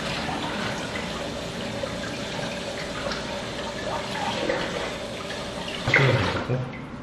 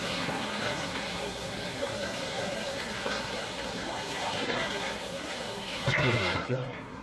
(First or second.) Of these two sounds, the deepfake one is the second